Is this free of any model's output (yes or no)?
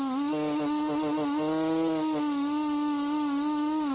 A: yes